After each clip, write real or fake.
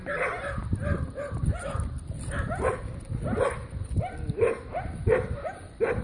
real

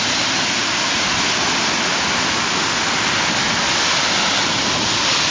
real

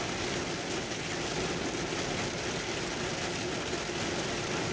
real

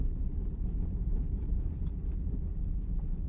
real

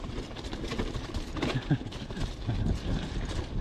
real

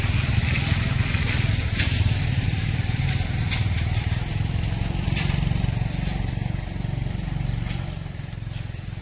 fake